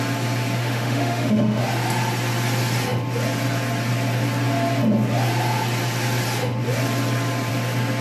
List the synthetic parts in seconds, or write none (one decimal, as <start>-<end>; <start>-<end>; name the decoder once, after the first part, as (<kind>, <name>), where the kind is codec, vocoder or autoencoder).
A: 0.6-1.6 (autoencoder, DAC-VAE)